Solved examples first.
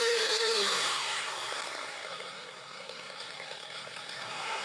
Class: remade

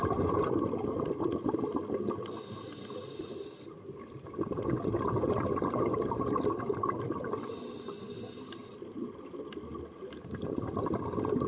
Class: recorded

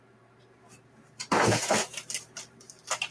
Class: remade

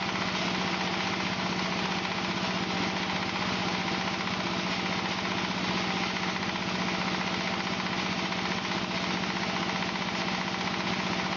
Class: recorded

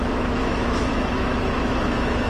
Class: remade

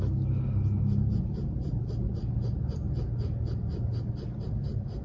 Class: recorded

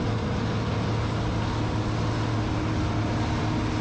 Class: recorded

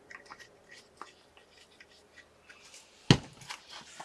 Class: recorded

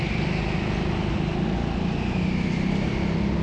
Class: recorded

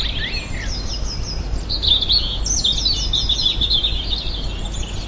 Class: recorded